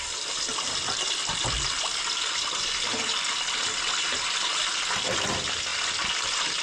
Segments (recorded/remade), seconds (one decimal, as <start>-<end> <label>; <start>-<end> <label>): 0.0-6.6 remade